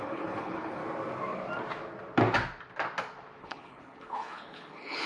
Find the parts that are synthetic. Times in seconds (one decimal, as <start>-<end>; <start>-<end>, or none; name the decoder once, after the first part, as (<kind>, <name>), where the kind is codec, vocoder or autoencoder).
0.0-0.8 (codec, HILCodec); 3.4-5.1